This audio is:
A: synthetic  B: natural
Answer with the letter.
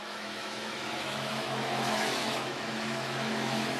A